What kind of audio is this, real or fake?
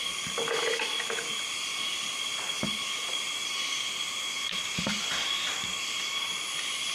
real